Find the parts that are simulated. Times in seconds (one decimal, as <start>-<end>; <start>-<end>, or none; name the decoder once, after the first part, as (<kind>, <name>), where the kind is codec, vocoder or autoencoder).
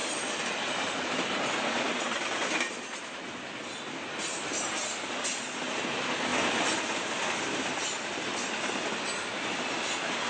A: 6.3-7.4 (vocoder, BigVGAN v2)